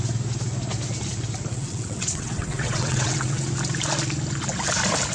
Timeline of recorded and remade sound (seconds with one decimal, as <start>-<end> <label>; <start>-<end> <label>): 0.0-1.5 recorded; 1.5-3.5 remade; 3.5-5.1 recorded